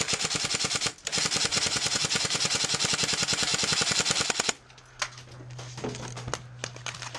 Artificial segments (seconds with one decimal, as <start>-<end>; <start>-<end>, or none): 1.5-2.6